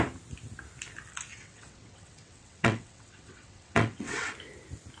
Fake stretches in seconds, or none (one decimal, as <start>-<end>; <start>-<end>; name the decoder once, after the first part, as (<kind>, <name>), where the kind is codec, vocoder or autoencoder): 1.3-4.3 (vocoder, WaveNeXt)